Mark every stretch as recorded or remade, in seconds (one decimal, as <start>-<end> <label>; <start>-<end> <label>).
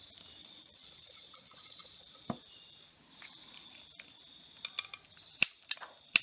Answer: 0.0-0.4 recorded; 0.4-2.4 remade; 2.4-6.2 recorded